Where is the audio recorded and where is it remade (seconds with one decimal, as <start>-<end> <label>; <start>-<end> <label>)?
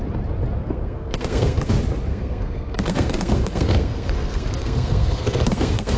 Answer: 0.0-0.6 recorded; 0.6-1.7 remade; 1.7-2.1 recorded; 2.1-6.0 remade